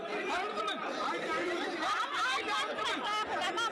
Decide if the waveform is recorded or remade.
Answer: recorded